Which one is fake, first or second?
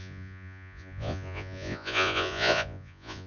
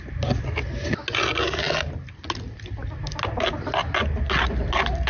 first